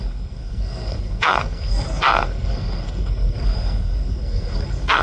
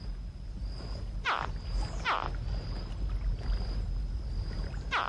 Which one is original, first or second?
second